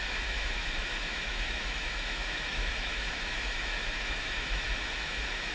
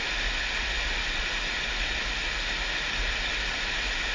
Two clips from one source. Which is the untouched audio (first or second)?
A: second